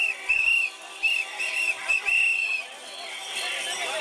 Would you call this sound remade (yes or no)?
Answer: no